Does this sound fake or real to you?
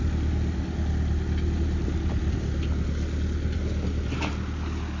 real